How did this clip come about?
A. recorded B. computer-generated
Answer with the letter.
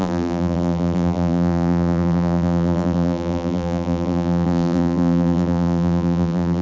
B